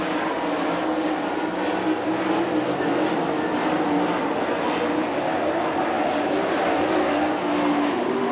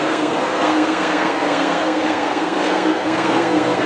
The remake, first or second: second